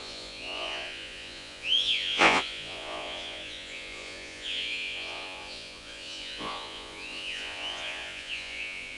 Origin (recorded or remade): remade